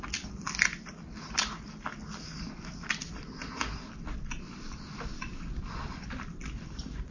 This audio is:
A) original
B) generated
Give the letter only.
A